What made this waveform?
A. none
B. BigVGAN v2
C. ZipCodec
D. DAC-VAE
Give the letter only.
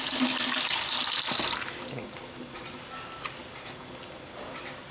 A